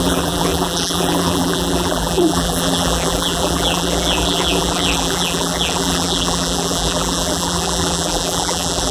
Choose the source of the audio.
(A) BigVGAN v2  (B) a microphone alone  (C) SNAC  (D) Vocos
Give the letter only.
A